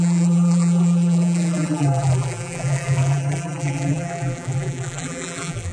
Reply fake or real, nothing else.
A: fake